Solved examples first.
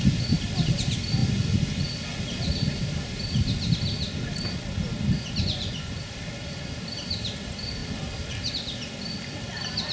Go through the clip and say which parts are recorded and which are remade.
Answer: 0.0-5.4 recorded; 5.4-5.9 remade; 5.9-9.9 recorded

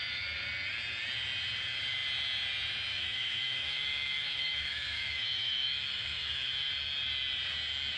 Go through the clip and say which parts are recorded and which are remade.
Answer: 0.0-2.9 recorded; 2.9-6.7 remade; 6.7-8.0 recorded